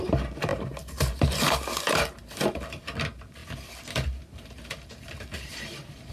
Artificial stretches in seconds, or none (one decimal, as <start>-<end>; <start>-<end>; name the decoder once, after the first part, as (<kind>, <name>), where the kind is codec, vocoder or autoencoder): 0.0-3.4 (vocoder, BigVGAN v2); 4.2-6.1